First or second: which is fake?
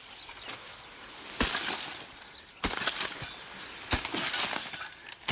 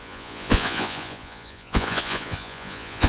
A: second